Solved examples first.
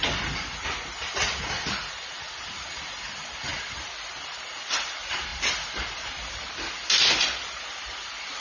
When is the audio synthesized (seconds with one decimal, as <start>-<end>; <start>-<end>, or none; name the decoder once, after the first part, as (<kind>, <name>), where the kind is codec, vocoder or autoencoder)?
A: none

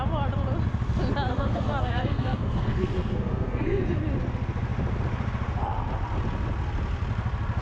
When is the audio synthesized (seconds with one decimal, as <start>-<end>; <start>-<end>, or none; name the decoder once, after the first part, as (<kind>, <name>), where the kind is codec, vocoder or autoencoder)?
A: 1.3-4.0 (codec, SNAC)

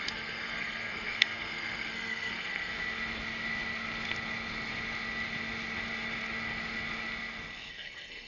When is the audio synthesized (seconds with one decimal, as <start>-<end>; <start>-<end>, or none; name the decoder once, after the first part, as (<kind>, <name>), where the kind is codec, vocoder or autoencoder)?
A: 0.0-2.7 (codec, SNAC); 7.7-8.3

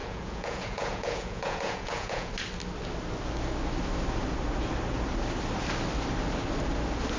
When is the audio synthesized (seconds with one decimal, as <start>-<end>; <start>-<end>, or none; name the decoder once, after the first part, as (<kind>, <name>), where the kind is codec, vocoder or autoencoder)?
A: 0.0-2.3 (vocoder, Vocos)